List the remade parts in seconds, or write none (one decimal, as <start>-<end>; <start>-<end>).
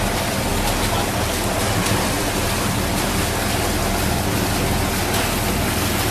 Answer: none